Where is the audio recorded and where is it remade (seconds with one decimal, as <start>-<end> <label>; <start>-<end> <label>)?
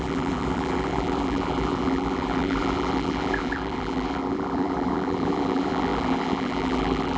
0.0-7.2 remade